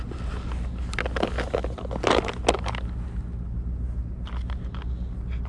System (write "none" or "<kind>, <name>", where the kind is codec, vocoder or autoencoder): none